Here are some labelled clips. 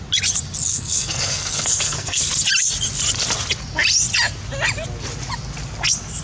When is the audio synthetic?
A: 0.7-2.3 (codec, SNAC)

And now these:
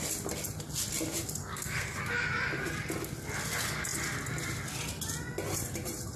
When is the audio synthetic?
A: 1.4-2.0 (codec, SNAC)

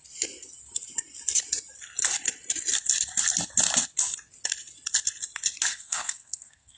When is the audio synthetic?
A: 5.7-6.8 (codec, SNAC)

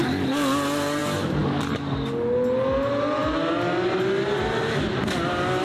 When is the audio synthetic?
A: none

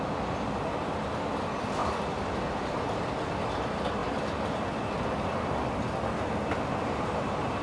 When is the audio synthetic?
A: none

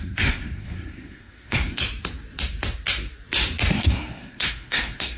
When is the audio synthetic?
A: 0.0-1.8 (codec, SNAC); 3.7-5.2

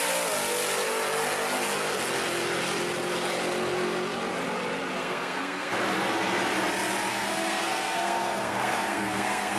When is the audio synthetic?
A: 5.0-5.7 (codec, SNAC); 7.1-9.6

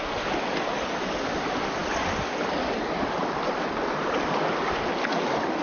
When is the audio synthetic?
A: none